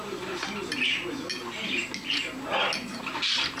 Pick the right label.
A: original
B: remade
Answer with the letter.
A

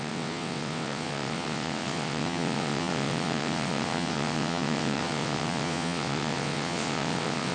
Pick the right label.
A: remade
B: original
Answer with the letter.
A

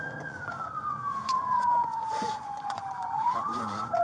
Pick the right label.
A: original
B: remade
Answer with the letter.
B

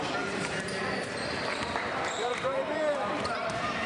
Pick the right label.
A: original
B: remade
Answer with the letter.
B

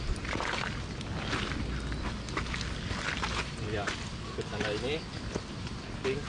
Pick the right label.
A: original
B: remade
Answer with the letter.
A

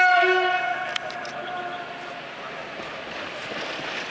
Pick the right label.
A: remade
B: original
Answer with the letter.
B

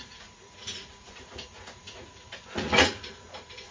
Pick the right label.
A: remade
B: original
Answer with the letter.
A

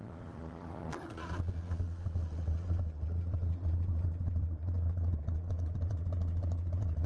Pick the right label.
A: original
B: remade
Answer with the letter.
B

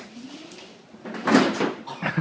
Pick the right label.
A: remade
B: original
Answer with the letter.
B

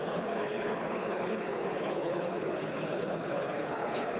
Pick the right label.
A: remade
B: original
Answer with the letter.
A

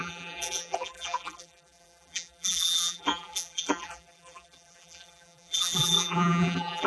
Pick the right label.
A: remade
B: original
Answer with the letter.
A